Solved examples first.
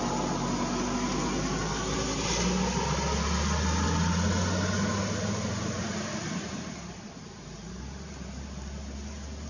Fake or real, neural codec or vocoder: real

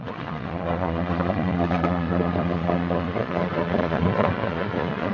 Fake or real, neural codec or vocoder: fake, vocoder, Vocos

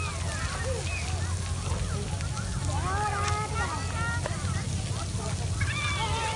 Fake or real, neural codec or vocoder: real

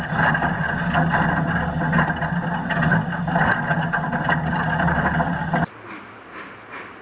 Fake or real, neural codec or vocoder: real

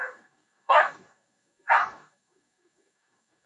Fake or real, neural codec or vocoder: fake, codec, DAC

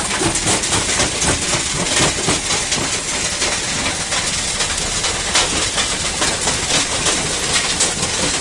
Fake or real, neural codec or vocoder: real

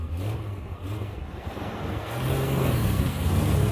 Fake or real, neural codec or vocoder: fake, codec, SNAC